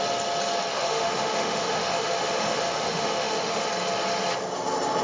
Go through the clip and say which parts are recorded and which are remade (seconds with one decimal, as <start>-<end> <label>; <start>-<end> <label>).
0.0-0.7 recorded; 0.7-3.7 remade; 3.7-5.0 recorded